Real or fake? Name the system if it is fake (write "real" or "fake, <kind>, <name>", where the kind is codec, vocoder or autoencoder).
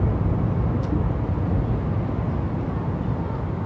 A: real